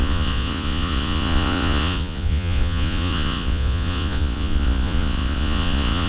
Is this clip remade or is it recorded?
remade